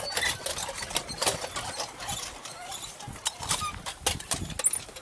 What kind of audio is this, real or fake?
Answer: real